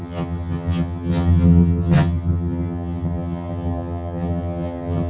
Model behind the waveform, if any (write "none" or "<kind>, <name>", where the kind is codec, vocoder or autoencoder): vocoder, HiFi-GAN